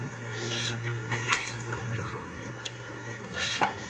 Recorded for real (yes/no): no